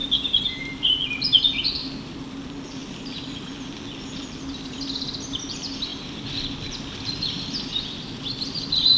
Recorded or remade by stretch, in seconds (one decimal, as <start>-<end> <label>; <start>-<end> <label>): 0.0-2.8 recorded; 2.8-3.6 remade; 3.6-9.0 recorded